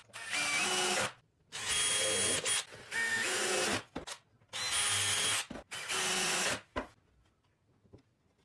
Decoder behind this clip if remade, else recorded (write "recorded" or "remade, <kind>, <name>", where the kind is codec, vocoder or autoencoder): recorded